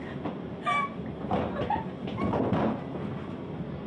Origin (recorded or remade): recorded